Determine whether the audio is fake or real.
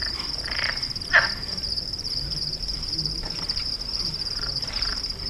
fake